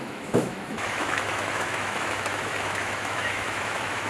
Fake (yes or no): yes